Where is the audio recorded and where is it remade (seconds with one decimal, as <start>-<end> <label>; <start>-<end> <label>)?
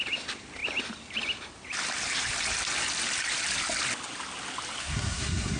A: 0.0-4.8 recorded; 4.8-5.6 remade